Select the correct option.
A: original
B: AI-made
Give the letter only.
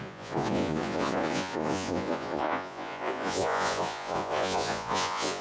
B